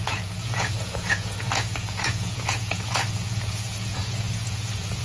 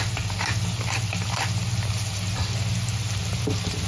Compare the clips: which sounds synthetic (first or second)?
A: first